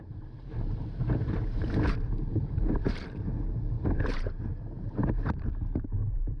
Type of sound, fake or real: fake